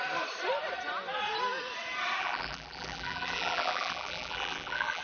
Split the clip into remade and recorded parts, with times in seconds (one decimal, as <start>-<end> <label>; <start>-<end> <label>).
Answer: 0.0-2.2 recorded; 2.2-5.0 remade